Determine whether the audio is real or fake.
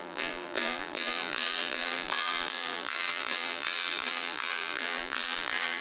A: fake